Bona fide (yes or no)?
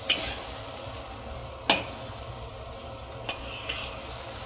yes